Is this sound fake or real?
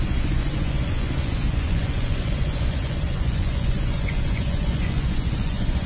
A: fake